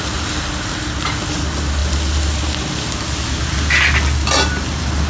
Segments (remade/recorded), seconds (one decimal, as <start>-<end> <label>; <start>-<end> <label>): 0.0-5.1 recorded